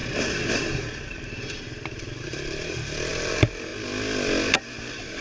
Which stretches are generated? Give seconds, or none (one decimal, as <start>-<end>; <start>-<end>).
0.0-3.7; 4.5-5.2